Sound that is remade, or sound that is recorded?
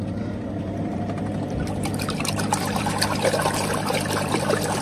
remade